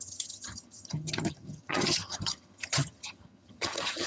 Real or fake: fake